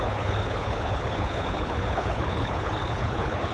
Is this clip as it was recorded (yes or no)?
no